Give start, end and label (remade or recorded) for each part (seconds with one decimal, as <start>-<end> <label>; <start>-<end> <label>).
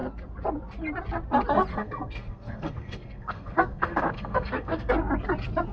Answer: 0.0-1.7 recorded; 1.7-4.9 remade; 4.9-5.7 recorded